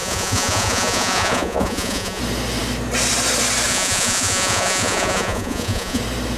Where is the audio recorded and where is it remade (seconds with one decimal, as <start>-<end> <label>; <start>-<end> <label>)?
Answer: 0.0-2.2 remade; 2.2-3.7 recorded; 3.7-6.0 remade; 6.0-6.4 recorded